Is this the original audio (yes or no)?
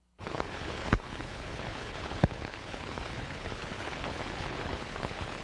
no